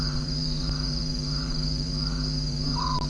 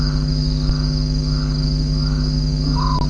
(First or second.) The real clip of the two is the second